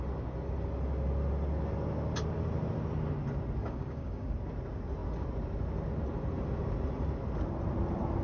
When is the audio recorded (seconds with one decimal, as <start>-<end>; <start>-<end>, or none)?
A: 0.0-3.6; 4.3-8.2